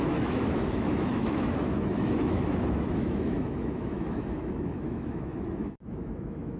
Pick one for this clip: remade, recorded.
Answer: remade